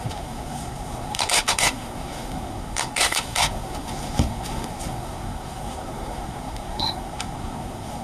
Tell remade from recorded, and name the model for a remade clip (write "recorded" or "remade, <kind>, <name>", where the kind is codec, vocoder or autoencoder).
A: remade, codec, SNAC